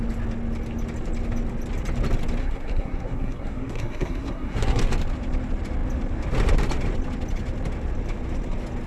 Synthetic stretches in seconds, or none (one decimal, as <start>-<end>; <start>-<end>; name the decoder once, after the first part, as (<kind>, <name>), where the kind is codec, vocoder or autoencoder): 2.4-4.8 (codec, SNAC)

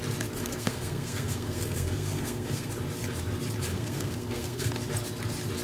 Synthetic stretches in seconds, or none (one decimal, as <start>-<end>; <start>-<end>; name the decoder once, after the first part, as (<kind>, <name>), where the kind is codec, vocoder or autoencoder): 0.4-2.7 (codec, SNAC); 3.7-4.7

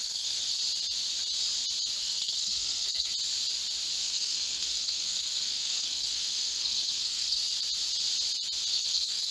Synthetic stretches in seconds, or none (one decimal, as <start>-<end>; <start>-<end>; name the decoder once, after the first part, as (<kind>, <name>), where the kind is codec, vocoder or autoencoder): 0.0-0.6 (codec, SNAC); 2.0-3.1; 4.0-7.5; 8.7-9.3